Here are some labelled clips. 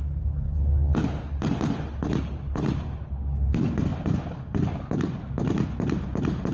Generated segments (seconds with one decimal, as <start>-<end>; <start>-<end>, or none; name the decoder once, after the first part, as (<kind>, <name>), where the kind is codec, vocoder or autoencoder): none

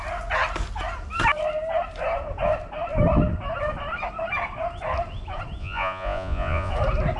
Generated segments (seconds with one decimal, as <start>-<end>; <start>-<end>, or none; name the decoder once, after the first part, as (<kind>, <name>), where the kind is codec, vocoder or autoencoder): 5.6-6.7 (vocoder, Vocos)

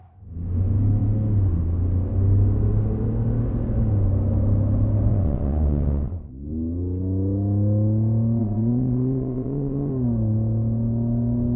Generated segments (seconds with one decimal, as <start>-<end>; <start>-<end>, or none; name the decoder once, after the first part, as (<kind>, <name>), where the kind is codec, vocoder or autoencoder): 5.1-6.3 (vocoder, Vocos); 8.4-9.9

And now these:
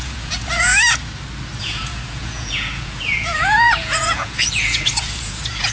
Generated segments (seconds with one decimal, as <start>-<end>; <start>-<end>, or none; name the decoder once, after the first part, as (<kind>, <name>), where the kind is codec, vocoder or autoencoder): 0.0-0.7 (vocoder, Vocos); 1.6-5.7

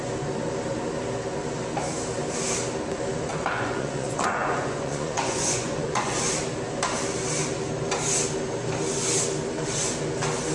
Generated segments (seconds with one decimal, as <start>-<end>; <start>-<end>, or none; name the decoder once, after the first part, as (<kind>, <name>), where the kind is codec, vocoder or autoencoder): 3.3-6.2 (vocoder, Vocos)